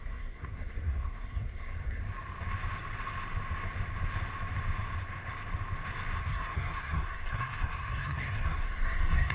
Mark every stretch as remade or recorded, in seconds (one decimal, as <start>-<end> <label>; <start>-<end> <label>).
0.0-2.0 remade; 2.0-6.2 recorded; 6.2-9.3 remade